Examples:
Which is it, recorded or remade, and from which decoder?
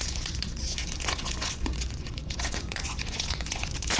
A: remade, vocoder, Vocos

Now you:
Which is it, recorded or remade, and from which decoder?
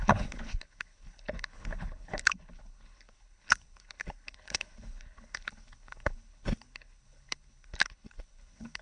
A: remade, codec, HILCodec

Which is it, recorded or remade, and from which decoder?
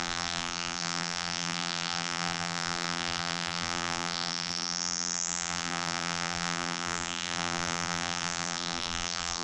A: remade, vocoder, BigVGAN v2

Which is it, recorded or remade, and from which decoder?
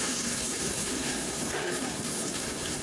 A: remade, codec, SNAC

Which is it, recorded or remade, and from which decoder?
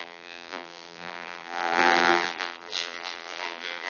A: remade, vocoder, BigVGAN v2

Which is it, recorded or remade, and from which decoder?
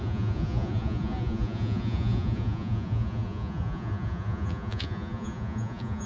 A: remade, vocoder, Vocos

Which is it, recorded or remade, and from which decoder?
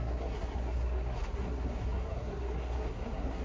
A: remade, codec, SNAC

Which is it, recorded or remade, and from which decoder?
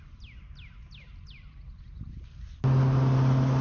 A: recorded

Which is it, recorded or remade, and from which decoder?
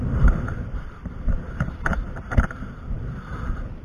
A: remade, vocoder, BigVGAN v2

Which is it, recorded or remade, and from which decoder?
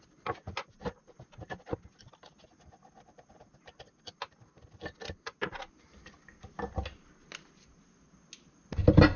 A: recorded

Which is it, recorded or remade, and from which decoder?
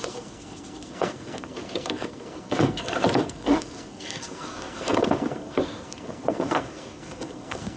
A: remade, codec, SNAC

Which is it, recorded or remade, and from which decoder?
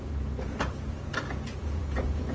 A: remade, vocoder, Vocos